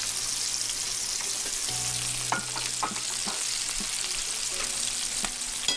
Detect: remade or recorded recorded